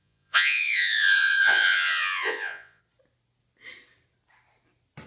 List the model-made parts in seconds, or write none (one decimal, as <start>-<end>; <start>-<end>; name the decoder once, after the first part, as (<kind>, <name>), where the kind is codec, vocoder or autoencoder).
0.0-2.8 (vocoder, Vocos)